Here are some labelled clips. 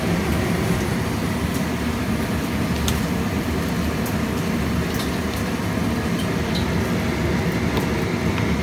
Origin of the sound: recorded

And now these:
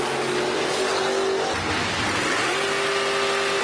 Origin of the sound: recorded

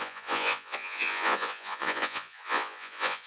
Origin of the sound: remade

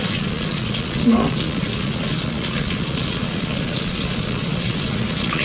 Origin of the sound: remade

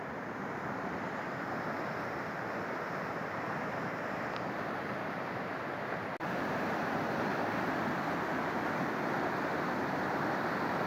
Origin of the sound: recorded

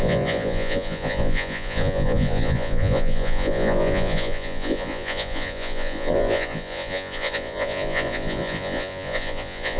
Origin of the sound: remade